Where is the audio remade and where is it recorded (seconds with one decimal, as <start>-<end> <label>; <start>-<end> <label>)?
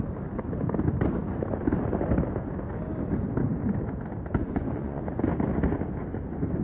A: 0.0-4.4 recorded; 4.4-5.0 remade; 5.0-6.6 recorded